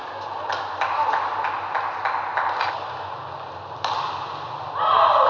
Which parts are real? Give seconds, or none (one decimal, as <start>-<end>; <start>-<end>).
0.0-5.3